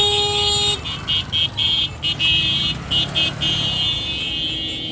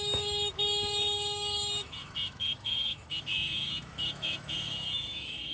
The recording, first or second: first